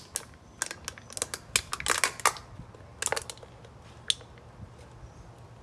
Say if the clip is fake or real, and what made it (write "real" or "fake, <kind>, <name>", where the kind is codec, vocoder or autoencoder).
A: real